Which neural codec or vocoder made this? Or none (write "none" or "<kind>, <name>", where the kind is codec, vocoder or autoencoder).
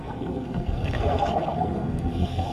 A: codec, SNAC